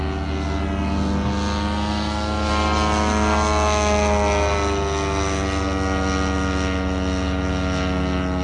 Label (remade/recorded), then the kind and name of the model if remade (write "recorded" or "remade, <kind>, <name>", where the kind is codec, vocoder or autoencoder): recorded